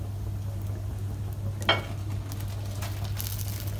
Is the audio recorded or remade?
recorded